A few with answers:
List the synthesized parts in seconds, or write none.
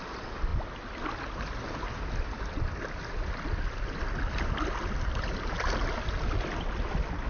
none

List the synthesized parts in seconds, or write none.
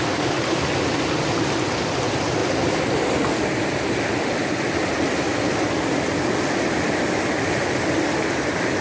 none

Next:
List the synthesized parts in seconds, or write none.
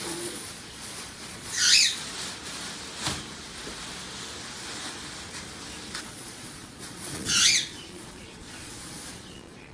0.0-2.0 (vocoder, Vocos); 6.0-9.7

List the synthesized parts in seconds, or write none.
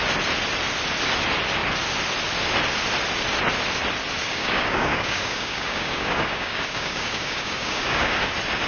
4.2-8.2 (codec, DAC)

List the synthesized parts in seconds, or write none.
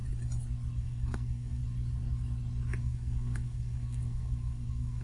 0.8-1.6 (codec, SNAC); 2.8-5.0